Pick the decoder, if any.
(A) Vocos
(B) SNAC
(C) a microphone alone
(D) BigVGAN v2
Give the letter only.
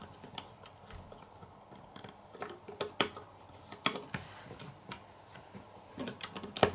C